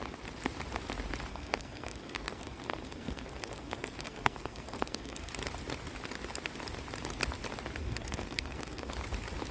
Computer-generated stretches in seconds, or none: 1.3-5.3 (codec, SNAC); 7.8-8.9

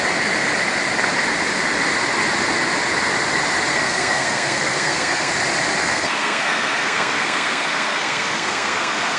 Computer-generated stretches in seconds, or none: 3.7-5.3 (codec, SNAC); 5.8-9.2